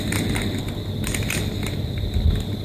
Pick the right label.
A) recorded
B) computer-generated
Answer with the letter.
A